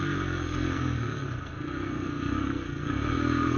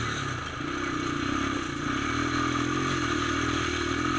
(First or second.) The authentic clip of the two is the second